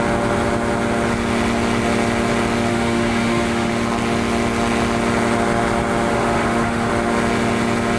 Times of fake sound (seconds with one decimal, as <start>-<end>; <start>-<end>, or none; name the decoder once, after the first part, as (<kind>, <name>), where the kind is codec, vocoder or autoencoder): 2.7-3.7 (autoencoder, DAC-VAE); 6.1-6.9